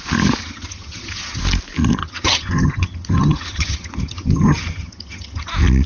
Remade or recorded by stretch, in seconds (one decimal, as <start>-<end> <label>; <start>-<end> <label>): 0.0-0.4 recorded; 0.4-1.4 remade; 1.4-2.0 recorded; 2.0-5.5 remade; 5.5-5.9 recorded